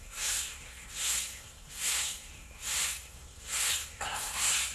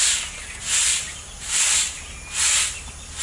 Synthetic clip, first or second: first